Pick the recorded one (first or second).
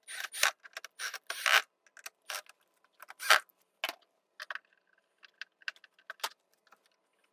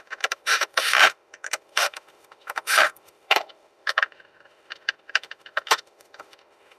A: first